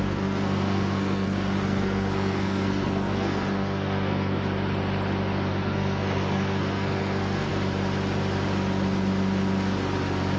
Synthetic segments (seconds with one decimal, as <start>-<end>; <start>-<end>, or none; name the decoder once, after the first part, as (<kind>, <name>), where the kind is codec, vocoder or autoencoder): 0.0-4.4 (codec, SNAC); 5.5-7.5